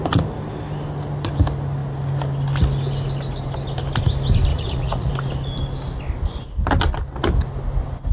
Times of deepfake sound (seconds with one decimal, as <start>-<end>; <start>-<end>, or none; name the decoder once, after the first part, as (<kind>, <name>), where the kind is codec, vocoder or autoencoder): 4.5-5.1 (vocoder, Vocos)